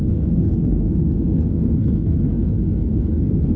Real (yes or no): no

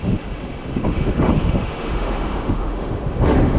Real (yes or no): no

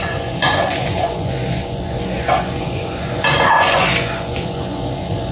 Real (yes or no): no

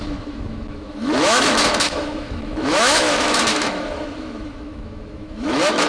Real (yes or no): no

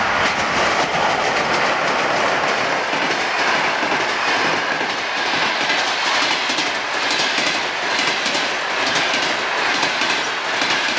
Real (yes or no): yes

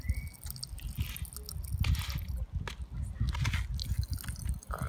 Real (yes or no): yes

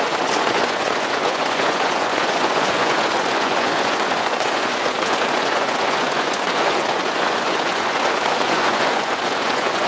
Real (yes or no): no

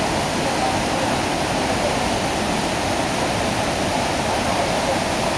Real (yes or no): yes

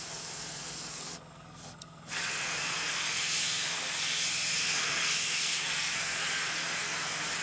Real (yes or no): no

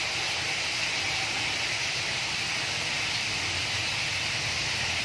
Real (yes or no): yes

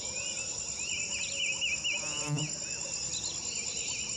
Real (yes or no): yes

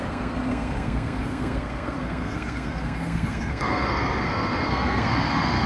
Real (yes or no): no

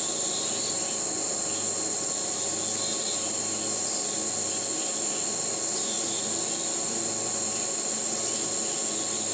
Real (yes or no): yes